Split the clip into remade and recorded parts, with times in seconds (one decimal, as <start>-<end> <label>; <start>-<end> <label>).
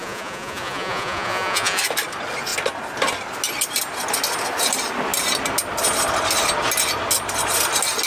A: 0.0-1.8 remade; 1.8-8.1 recorded